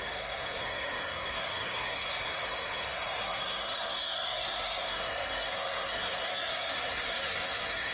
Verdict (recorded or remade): remade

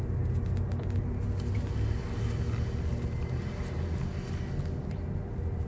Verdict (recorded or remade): recorded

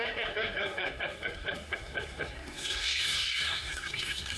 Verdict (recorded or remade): remade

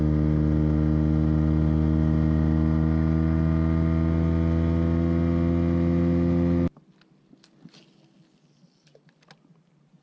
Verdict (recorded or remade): recorded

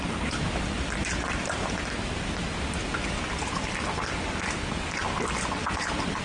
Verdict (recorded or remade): recorded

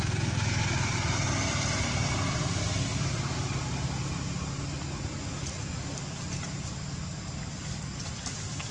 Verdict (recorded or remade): recorded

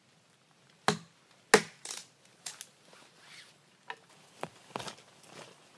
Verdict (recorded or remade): recorded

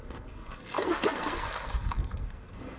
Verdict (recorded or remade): remade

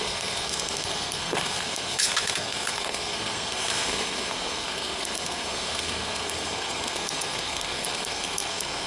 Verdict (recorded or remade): remade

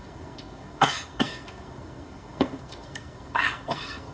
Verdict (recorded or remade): remade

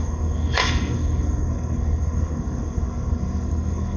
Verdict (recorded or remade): remade